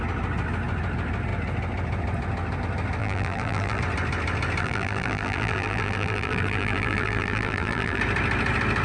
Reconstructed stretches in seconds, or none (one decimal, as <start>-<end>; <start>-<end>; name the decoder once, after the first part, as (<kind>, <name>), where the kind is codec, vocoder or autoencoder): 3.0-3.8 (vocoder, BigVGAN v2); 4.6-8.0